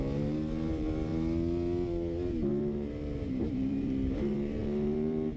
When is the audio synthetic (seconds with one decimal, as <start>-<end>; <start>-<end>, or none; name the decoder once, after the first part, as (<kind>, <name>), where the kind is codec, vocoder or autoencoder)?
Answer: 0.0-1.1 (vocoder, BigVGAN v2); 2.5-5.4